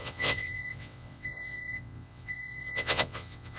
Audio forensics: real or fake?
fake